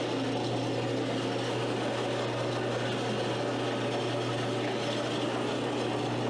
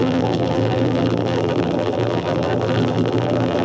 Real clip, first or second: first